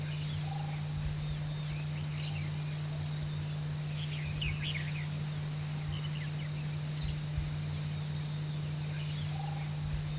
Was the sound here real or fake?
real